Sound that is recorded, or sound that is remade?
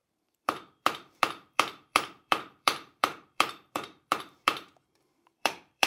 remade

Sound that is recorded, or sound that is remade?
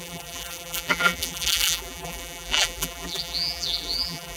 remade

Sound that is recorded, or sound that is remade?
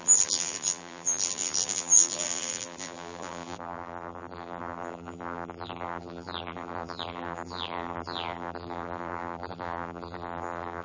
remade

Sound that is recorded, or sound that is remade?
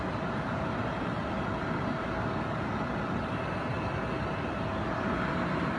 recorded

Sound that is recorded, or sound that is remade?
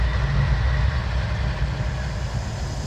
recorded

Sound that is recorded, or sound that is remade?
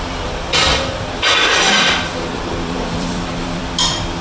remade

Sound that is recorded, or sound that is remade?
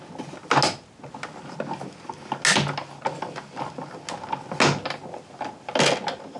recorded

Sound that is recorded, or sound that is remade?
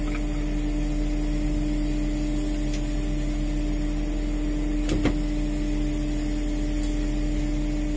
recorded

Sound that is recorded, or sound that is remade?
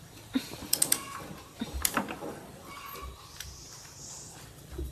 remade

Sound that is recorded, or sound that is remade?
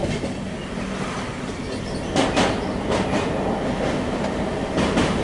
recorded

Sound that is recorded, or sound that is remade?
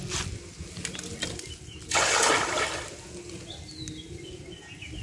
recorded